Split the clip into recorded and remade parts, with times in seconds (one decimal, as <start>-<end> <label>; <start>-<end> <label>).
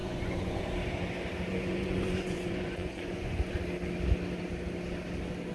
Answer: 0.0-0.6 remade; 0.6-1.5 recorded; 1.5-3.5 remade; 3.5-5.5 recorded